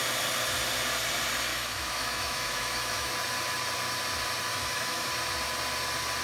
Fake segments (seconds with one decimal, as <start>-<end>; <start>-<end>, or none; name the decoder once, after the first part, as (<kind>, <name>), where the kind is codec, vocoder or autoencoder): 1.5-3.1 (autoencoder, DAC-VAE); 4.5-5.1